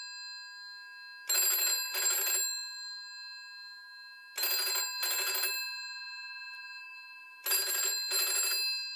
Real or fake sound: real